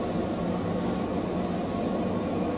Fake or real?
real